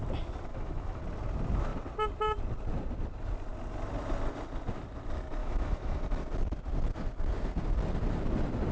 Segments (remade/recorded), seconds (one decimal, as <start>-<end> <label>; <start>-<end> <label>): 0.0-0.5 recorded; 0.5-1.0 remade; 1.0-5.4 recorded; 5.4-6.0 remade; 6.0-8.7 recorded